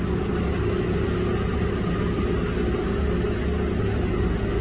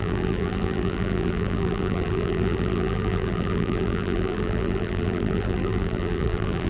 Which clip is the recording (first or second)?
first